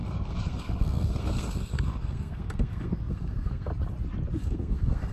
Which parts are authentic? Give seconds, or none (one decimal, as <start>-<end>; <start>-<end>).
3.7-4.4

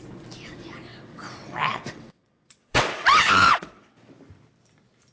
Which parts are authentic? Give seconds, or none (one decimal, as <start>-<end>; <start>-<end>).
0.0-0.9; 4.0-5.1